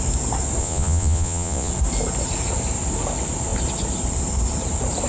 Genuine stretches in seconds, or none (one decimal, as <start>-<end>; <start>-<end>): 0.0-0.6; 1.7-5.1